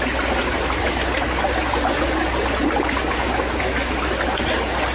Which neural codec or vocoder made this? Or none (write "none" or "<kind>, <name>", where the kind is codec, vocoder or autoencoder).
none